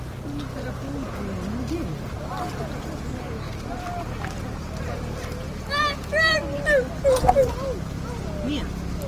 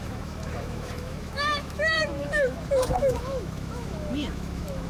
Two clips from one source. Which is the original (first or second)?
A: first